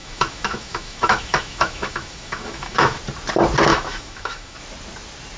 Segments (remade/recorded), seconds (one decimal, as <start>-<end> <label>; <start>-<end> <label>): 0.0-3.0 remade; 3.0-3.7 recorded; 3.7-4.6 remade; 4.6-5.4 recorded